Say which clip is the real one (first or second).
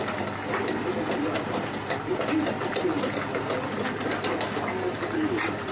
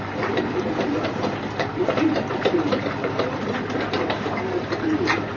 first